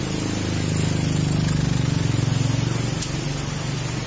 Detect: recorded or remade recorded